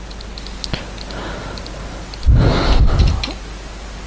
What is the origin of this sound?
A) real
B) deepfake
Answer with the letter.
A